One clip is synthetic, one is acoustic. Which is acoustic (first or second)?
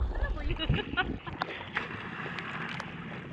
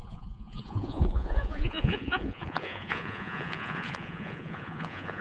first